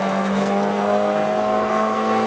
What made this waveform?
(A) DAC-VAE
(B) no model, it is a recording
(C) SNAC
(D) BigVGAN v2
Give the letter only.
C